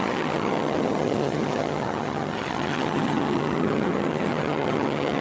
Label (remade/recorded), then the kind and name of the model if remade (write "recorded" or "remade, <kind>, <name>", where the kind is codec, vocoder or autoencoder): remade, vocoder, HiFi-GAN